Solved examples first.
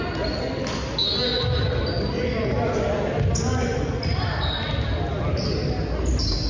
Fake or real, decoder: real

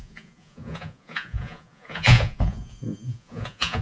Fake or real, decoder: fake, vocoder, Vocos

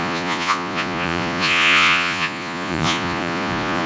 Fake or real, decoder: fake, vocoder, Vocos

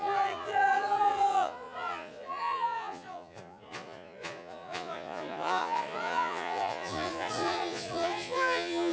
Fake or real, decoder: fake, vocoder, Vocos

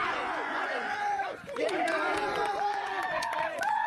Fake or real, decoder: fake, vocoder, Vocos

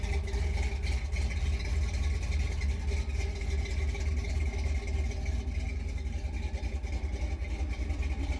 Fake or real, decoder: real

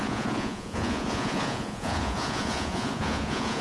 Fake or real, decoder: fake, vocoder, Vocos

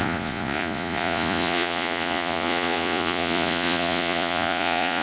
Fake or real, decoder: fake, vocoder, Vocos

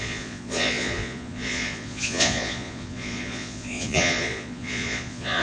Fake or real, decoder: fake, vocoder, Vocos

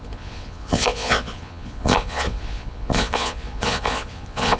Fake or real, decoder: fake, vocoder, Vocos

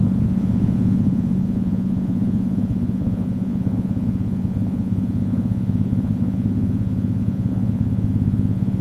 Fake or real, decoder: fake, vocoder, Vocos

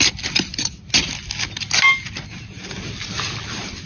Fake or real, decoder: real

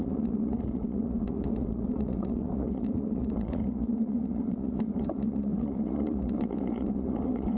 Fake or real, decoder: fake, vocoder, Vocos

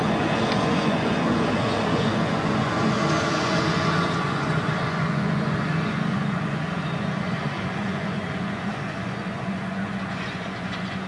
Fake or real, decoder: fake, vocoder, Vocos